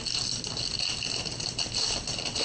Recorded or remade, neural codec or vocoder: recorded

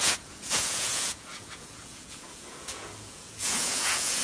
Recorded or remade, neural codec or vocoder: remade, vocoder, Vocos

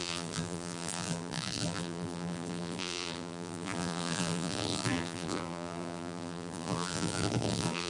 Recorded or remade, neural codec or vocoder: remade, vocoder, BigVGAN v2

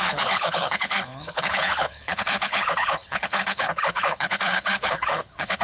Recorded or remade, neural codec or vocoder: remade, codec, HILCodec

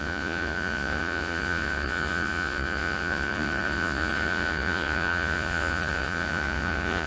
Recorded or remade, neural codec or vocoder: remade, vocoder, Vocos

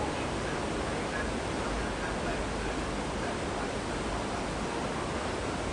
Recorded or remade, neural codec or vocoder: recorded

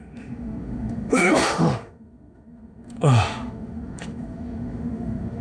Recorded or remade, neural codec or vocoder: remade, autoencoder, DAC-VAE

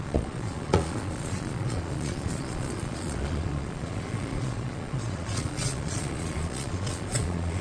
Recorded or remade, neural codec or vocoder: remade, vocoder, Vocos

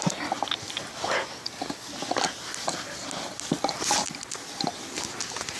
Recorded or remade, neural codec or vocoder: recorded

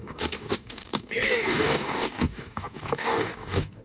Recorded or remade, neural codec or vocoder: remade, codec, DAC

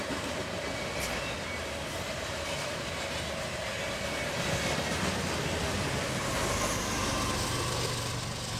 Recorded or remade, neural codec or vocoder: recorded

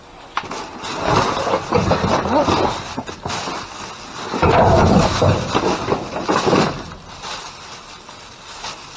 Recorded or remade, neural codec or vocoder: recorded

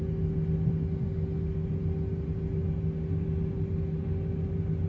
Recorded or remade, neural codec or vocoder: recorded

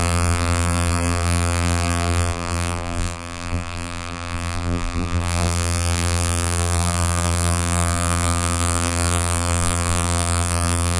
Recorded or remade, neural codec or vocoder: remade, vocoder, BigVGAN v2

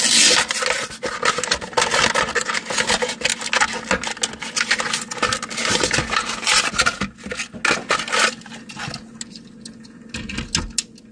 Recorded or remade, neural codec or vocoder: recorded